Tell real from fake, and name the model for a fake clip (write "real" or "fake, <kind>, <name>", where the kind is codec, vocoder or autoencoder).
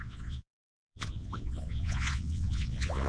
fake, vocoder, Vocos